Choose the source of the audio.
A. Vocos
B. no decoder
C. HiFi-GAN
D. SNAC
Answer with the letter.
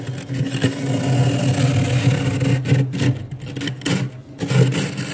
B